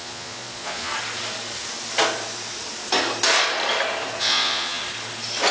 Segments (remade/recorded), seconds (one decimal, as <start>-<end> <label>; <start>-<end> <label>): 0.0-0.9 remade; 0.9-4.2 recorded; 4.2-4.8 remade; 4.8-5.5 recorded